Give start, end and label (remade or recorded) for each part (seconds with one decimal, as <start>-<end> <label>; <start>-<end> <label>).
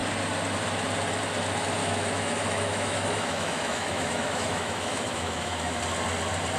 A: 0.0-1.8 recorded; 1.8-5.8 remade; 5.8-6.6 recorded